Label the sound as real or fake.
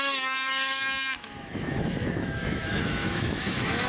fake